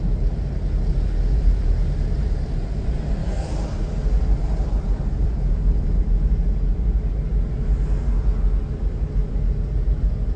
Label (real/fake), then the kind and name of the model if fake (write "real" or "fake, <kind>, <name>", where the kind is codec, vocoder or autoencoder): real